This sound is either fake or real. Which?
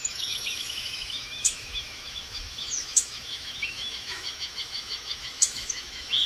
fake